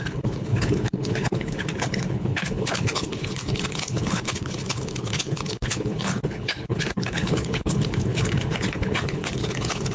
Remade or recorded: remade